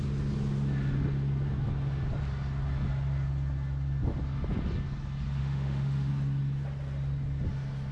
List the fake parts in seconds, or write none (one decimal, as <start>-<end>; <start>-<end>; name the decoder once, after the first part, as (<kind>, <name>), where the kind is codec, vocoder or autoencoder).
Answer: 5.4-6.1 (autoencoder, DAC-VAE)